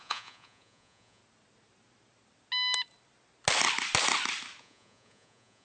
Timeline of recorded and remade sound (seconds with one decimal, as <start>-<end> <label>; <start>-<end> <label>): 0.0-1.2 remade; 1.2-4.6 recorded; 4.6-5.6 remade